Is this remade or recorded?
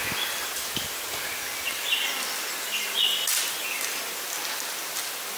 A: recorded